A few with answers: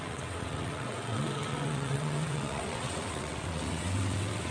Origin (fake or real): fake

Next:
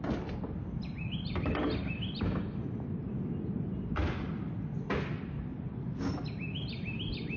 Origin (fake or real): real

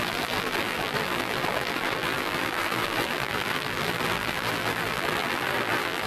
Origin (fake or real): fake